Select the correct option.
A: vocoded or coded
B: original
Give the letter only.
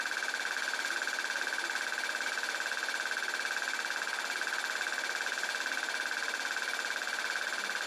B